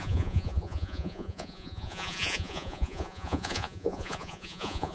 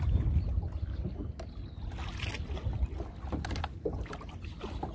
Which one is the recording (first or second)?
second